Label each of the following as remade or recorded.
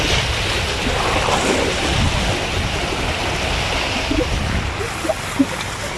recorded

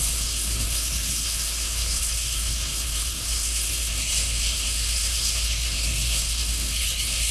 remade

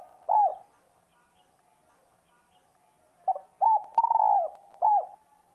recorded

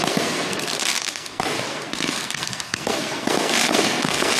remade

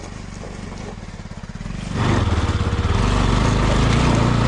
recorded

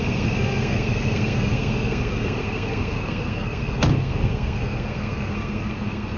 remade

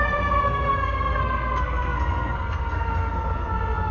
remade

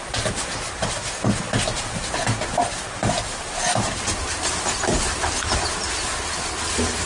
recorded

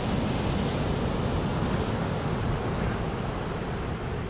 recorded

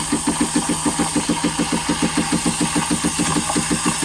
recorded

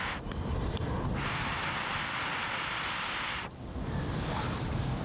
recorded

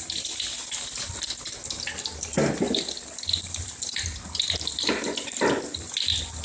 recorded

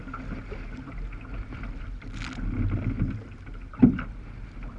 recorded